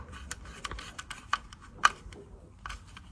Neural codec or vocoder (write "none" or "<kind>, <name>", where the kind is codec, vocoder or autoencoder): vocoder, BigVGAN v2